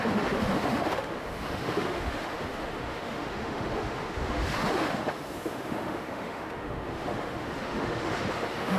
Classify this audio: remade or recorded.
remade